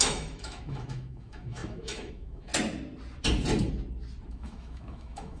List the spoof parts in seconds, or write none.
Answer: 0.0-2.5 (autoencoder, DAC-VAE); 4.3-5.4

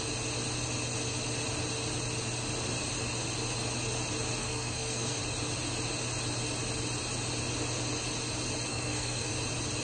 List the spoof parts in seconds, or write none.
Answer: 4.4-5.2 (codec, SNAC); 8.7-9.3

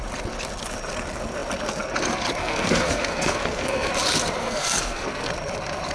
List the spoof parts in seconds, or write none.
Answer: 2.4-3.9 (codec, SNAC); 4.4-5.3

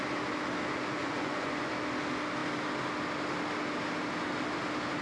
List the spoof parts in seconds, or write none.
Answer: 1.0-1.7 (vocoder, Vocos)

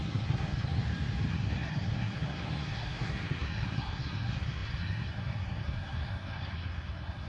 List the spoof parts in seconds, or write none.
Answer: 0.0-0.8 (codec, SNAC); 1.3-7.3

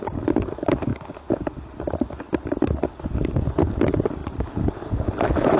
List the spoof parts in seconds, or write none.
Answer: none